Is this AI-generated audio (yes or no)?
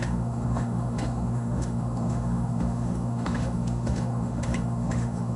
yes